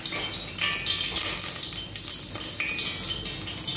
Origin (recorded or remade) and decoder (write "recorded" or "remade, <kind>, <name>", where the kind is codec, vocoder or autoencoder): recorded